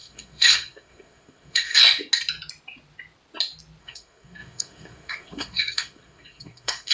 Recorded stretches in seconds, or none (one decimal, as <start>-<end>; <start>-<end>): 1.8-3.8